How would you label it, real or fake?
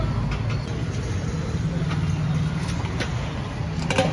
real